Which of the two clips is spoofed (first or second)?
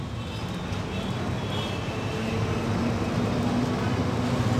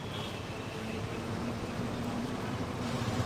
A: second